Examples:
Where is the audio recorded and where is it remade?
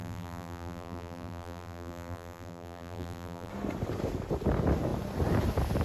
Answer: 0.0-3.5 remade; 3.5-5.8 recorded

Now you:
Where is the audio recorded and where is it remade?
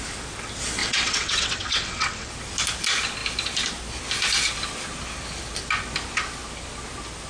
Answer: 0.0-0.8 recorded; 0.8-2.3 remade; 2.3-7.3 recorded